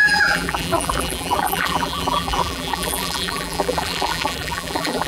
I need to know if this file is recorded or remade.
remade